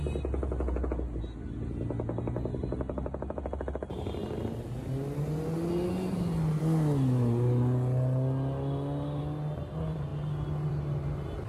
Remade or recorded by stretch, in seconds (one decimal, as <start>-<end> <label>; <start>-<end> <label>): 0.0-11.5 recorded